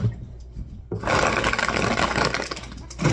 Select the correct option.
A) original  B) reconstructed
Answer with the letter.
A